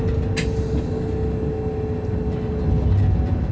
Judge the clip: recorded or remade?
recorded